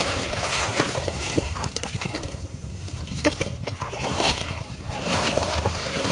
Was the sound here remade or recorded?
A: remade